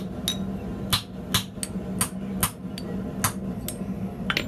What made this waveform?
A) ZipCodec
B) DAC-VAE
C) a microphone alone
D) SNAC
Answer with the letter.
C